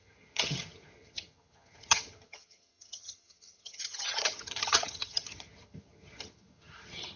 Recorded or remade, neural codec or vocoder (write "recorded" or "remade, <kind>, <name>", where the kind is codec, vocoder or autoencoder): remade, vocoder, HiFi-GAN